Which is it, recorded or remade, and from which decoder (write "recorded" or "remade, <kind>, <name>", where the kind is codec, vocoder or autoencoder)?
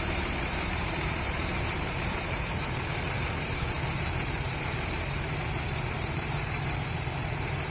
remade, vocoder, BigVGAN v2